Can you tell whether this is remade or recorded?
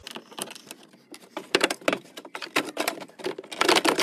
recorded